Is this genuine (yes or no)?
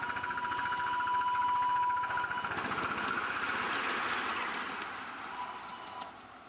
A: yes